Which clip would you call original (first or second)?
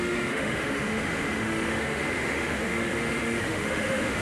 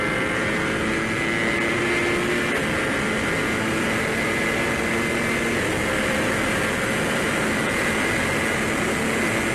second